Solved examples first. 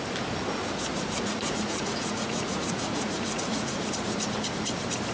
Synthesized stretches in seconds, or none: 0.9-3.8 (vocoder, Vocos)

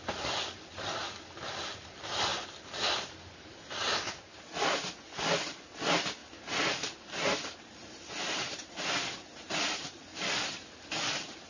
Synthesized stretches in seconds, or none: none

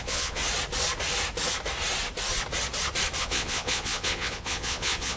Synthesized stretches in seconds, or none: 0.0-0.4 (vocoder, Vocos); 3.2-5.2

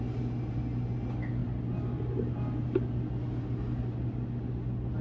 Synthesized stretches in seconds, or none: none